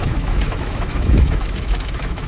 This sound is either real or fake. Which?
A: fake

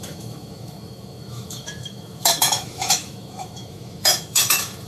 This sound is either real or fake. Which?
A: fake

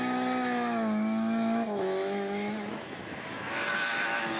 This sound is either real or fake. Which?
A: fake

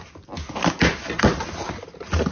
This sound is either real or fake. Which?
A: real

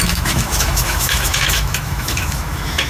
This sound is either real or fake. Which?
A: fake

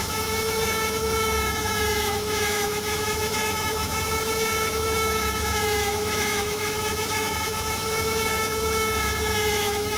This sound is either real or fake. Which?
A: fake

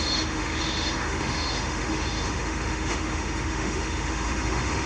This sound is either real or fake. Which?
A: fake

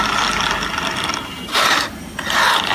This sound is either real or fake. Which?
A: real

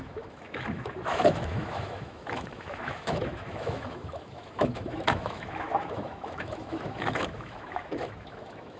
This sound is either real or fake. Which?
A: fake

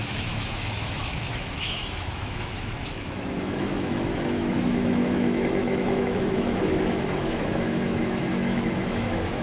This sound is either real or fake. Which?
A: fake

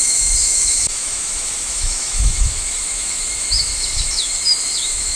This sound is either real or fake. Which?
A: fake